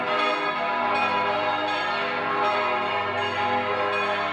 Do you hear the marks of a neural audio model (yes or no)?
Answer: no